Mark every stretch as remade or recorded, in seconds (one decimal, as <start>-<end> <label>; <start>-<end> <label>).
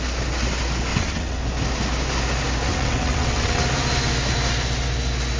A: 0.0-0.9 recorded; 0.9-1.4 remade; 1.4-2.7 recorded; 2.7-3.6 remade; 3.6-5.4 recorded